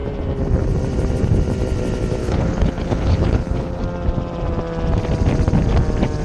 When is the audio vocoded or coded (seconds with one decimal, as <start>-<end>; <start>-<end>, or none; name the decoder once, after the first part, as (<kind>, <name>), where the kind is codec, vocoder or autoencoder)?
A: 2.2-3.8 (codec, HILCodec)